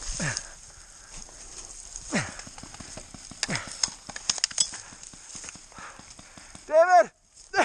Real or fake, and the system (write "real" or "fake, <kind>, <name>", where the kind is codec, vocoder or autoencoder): real